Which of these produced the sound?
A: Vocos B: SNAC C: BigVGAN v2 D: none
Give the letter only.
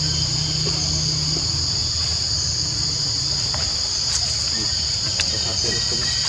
D